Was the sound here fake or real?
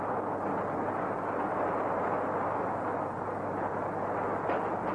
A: real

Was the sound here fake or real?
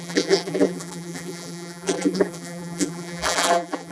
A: fake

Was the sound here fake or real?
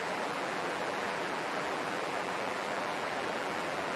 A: fake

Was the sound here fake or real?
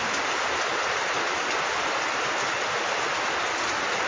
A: real